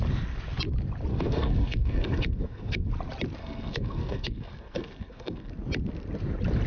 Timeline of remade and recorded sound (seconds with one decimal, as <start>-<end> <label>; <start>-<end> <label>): 0.0-1.1 recorded; 1.1-2.9 remade; 2.9-3.4 recorded; 3.4-5.5 remade; 5.5-6.7 recorded